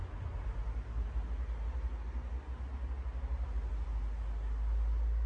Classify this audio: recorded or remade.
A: recorded